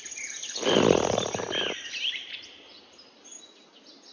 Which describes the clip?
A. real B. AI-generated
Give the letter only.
A